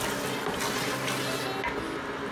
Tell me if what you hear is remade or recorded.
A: recorded